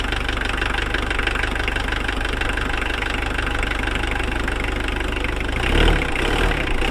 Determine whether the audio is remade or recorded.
recorded